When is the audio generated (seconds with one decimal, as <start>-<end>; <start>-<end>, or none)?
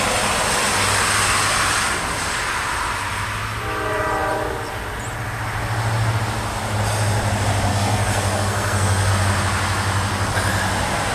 7.7-9.1